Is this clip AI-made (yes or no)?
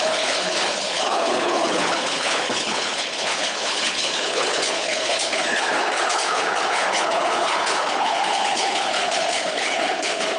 yes